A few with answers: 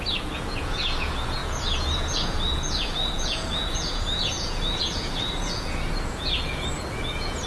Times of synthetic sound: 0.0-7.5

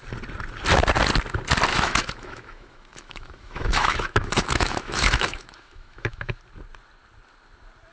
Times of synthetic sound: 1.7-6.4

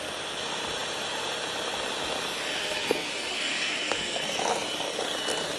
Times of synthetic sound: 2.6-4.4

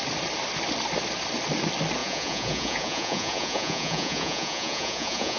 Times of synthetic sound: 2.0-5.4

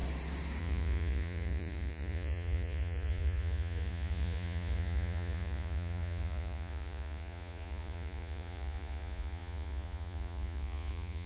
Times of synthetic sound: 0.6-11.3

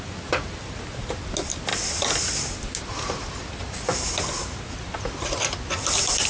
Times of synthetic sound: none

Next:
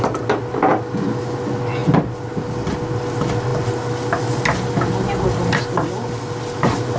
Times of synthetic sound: none

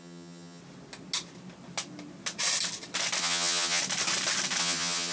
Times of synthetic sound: 0.0-0.6; 3.2-3.8; 4.6-5.1